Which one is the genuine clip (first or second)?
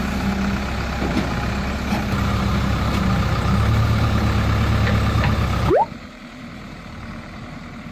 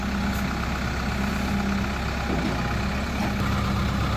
second